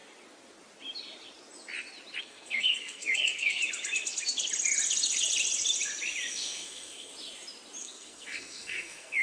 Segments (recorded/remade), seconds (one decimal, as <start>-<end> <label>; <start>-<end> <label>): 0.0-2.2 recorded; 2.2-3.6 remade; 3.6-6.3 recorded; 6.3-7.1 remade; 7.1-7.8 recorded; 7.8-9.2 remade